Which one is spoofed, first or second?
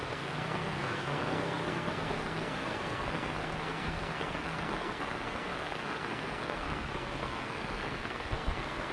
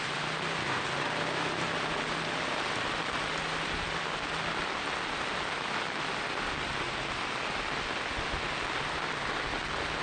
first